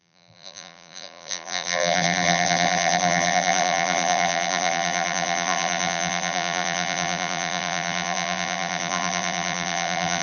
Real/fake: fake